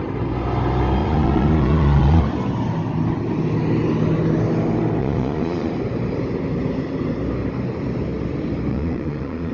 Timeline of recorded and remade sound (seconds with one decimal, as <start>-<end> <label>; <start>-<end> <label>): 0.0-1.0 recorded; 1.0-2.2 remade; 2.2-5.0 recorded; 5.0-5.7 remade; 5.7-8.7 recorded; 8.7-9.5 remade